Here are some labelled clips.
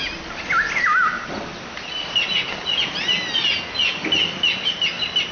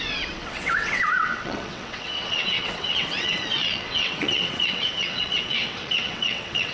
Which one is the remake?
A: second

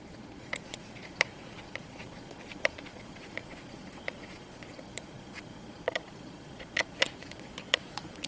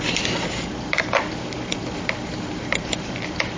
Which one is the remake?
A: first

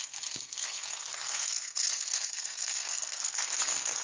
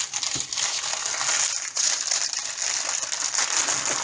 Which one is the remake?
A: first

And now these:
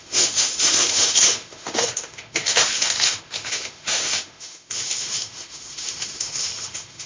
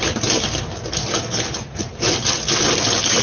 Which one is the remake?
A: first